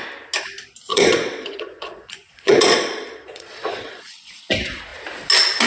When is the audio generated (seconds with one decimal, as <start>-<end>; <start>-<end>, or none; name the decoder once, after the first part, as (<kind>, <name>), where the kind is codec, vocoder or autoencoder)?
0.9-4.3 (vocoder, Vocos)